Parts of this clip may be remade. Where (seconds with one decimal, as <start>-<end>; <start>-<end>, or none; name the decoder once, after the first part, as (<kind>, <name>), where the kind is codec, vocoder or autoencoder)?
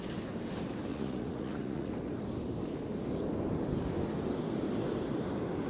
0.9-1.9 (vocoder, Vocos)